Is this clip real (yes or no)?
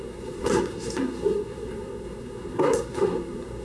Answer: no